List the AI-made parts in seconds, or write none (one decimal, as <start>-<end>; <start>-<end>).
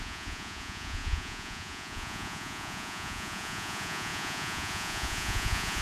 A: 0.0-5.8